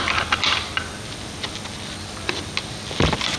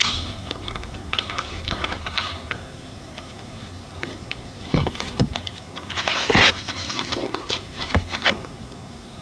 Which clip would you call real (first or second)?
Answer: first